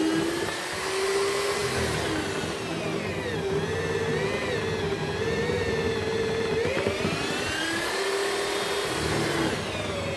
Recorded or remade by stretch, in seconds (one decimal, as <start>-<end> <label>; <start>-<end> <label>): 0.0-10.2 recorded

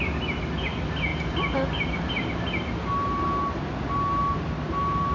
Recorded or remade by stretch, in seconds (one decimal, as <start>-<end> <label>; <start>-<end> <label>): 0.0-5.1 recorded

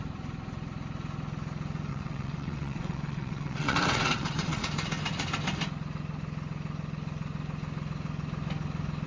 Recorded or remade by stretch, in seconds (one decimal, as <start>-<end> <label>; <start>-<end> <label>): 0.0-1.9 recorded; 1.9-4.6 remade; 4.6-9.1 recorded

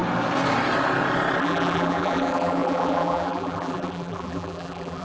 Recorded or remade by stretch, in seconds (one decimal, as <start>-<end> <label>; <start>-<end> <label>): 0.0-1.4 recorded; 1.4-5.0 remade

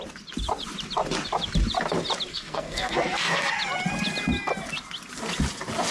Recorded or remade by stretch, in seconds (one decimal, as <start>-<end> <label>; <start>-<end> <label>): 0.0-2.3 recorded; 2.3-3.5 remade; 3.5-5.9 recorded